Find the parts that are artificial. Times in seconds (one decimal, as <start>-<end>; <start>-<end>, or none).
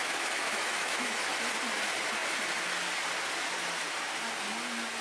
0.0-1.3